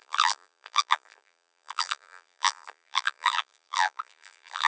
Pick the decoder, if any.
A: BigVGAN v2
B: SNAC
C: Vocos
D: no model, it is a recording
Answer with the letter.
A